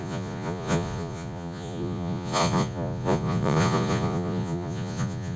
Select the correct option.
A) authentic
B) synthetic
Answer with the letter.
B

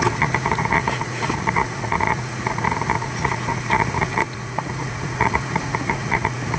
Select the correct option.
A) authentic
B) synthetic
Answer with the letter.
B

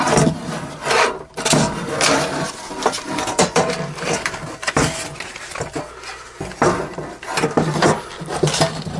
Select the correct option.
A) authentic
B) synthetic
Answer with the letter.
A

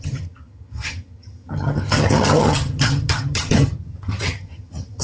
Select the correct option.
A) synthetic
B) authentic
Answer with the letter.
A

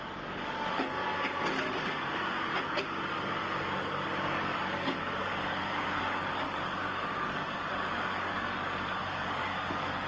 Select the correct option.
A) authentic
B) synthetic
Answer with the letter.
B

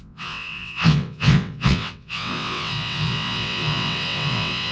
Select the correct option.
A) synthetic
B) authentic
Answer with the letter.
A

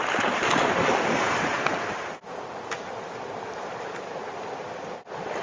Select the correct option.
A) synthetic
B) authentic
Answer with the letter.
B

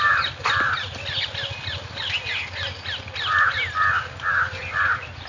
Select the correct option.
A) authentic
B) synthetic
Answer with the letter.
A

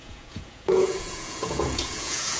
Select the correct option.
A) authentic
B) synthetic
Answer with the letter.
B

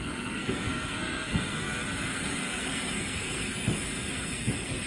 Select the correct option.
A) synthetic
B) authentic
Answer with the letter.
A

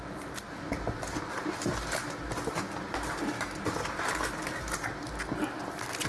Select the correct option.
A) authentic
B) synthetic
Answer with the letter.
A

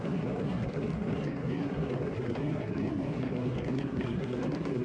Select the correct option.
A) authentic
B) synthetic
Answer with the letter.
B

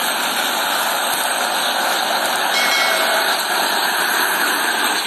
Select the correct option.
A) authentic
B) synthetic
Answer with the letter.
B